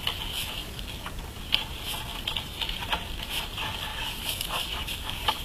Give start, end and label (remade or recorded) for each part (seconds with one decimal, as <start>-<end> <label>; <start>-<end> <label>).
0.0-0.6 recorded; 0.6-1.4 remade; 1.4-3.9 recorded; 3.9-5.4 remade